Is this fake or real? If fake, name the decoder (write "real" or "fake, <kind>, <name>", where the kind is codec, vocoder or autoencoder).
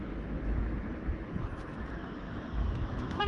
fake, autoencoder, DAC-VAE